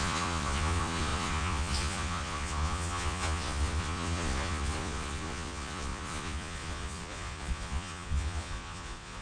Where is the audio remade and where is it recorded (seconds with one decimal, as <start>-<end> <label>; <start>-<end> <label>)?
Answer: 0.0-9.2 remade